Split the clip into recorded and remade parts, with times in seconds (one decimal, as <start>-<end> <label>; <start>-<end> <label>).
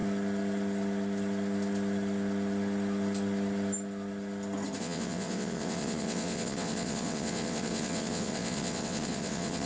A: 0.0-4.8 recorded; 4.8-9.7 remade